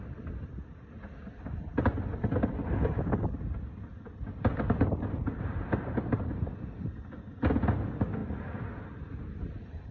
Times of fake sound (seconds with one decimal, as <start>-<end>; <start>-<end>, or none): none

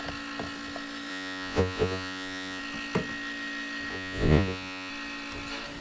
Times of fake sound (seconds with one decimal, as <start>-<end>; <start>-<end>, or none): 1.1-2.6; 3.9-4.9

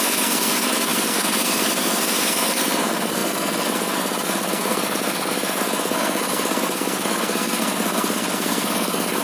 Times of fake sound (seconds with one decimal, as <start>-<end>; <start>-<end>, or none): 0.0-9.2

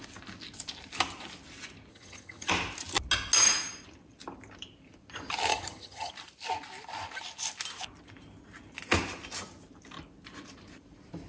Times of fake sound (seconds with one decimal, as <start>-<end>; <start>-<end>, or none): 1.9-2.5; 5.5-6.1

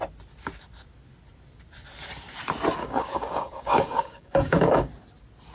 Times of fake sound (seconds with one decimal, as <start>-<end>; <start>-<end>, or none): 2.8-4.9